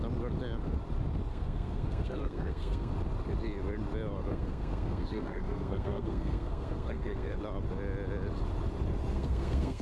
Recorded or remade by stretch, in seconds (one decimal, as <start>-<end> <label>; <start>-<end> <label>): 0.0-1.3 recorded; 1.3-2.9 remade; 2.9-4.3 recorded; 4.3-7.4 remade; 7.4-9.1 recorded; 9.1-9.8 remade